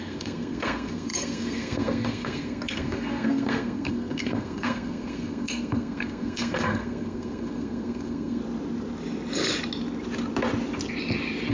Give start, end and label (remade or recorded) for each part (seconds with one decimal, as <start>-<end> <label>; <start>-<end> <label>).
0.0-8.4 remade; 8.4-11.5 recorded